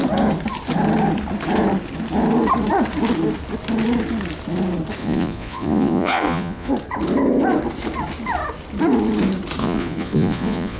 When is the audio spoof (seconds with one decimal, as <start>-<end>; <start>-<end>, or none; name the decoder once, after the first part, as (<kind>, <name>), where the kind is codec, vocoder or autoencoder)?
5.0-6.7 (vocoder, Vocos); 9.6-10.8